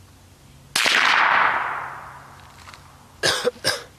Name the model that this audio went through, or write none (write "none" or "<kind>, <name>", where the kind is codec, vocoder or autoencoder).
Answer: none